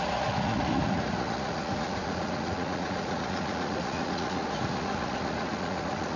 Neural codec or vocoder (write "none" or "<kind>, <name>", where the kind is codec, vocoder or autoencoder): vocoder, Vocos